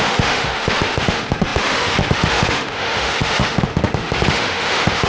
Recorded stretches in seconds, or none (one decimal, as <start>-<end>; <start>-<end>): none